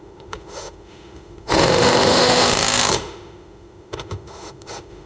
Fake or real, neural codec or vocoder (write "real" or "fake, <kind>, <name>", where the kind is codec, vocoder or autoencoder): fake, autoencoder, DAC-VAE